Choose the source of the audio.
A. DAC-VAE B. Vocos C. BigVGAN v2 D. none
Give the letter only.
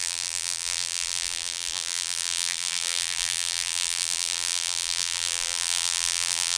C